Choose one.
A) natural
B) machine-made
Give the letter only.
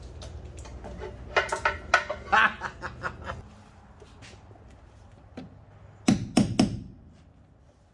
A